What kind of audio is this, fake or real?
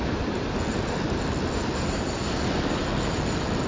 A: real